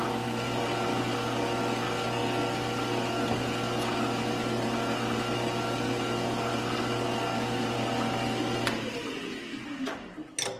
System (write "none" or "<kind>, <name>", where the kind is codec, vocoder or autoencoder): none